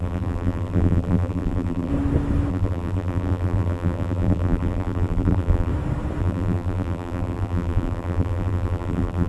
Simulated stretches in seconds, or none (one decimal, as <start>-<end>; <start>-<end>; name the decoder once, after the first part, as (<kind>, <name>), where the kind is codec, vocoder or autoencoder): 0.0-1.9 (vocoder, BigVGAN v2); 2.5-5.7; 6.2-9.3